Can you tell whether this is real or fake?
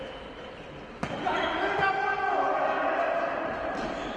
real